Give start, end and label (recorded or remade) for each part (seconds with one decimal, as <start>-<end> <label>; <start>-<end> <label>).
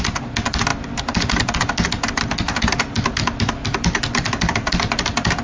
0.0-5.4 recorded